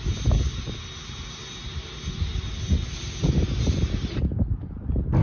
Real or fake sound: real